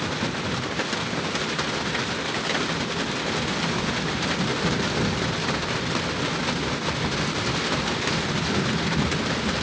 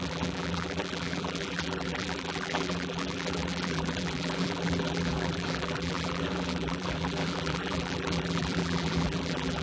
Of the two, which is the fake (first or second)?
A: second